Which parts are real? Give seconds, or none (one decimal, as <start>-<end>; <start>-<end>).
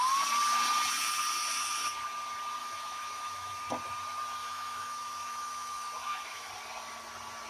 0.0-2.6; 3.6-4.4; 6.5-7.5